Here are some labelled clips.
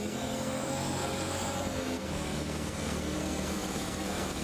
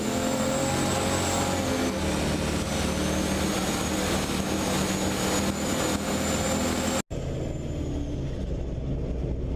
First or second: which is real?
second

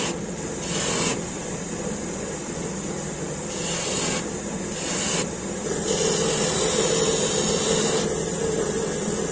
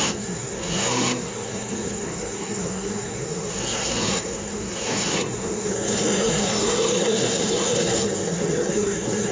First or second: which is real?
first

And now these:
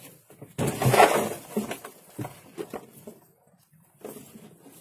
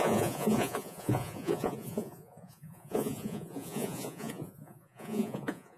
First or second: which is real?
first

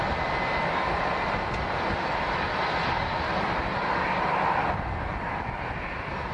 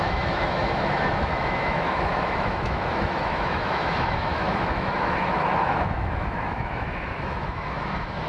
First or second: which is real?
first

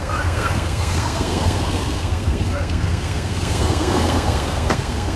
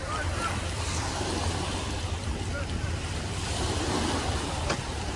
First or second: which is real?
second